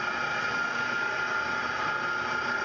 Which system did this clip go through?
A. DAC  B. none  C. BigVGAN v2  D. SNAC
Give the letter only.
B